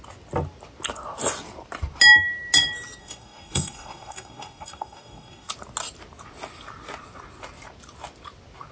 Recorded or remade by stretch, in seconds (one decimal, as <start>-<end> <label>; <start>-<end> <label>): 0.0-3.0 recorded; 3.0-5.5 remade; 5.5-8.7 recorded